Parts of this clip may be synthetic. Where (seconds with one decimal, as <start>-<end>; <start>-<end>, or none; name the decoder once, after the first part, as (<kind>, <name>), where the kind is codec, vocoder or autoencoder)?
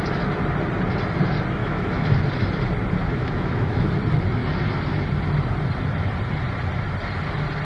1.6-2.2 (autoencoder, DAC-VAE); 3.0-3.9